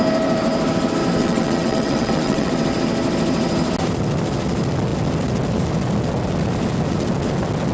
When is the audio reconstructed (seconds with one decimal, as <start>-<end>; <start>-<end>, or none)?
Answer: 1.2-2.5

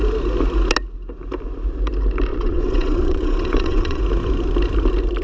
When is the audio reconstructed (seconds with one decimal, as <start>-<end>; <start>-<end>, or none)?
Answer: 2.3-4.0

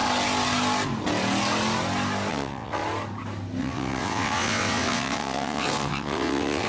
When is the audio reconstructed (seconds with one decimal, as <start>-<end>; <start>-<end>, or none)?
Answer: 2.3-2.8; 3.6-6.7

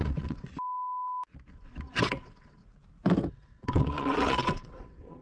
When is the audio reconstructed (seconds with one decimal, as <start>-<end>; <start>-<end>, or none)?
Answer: 0.0-0.5; 1.5-2.6; 3.3-5.2

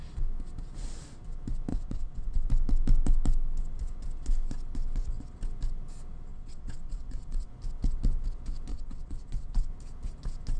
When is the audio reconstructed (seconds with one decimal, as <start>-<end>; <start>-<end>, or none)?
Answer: 1.7-2.5; 6.3-7.5; 8.7-9.7

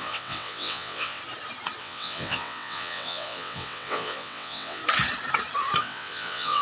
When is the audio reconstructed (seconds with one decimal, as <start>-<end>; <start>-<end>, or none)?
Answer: 0.0-1.2; 1.8-4.8; 5.8-6.6